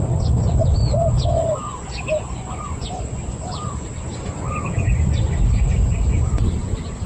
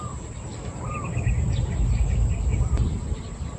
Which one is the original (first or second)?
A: second